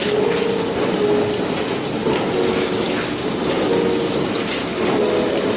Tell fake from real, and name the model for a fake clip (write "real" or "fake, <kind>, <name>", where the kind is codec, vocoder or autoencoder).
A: real